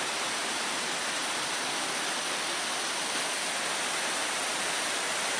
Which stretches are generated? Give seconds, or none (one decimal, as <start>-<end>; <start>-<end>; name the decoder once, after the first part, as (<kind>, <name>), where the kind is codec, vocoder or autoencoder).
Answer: none